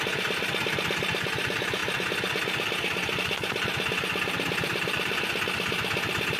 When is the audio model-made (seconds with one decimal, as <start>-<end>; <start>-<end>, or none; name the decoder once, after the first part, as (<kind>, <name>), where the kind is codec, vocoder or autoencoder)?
none